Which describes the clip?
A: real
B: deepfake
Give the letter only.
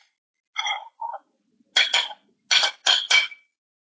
A